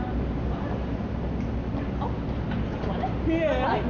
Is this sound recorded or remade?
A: recorded